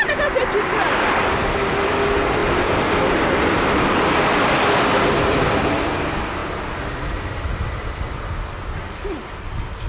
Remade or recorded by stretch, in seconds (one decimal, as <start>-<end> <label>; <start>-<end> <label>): 0.0-6.4 remade; 6.4-7.0 recorded; 7.0-9.9 remade